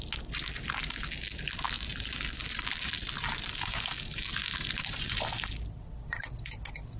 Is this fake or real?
real